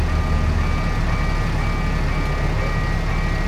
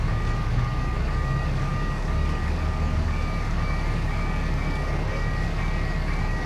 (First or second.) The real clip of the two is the first